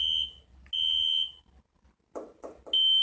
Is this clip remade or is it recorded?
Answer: recorded